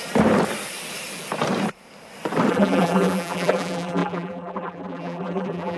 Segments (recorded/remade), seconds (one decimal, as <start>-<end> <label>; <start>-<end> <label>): 0.0-2.5 recorded; 2.5-5.8 remade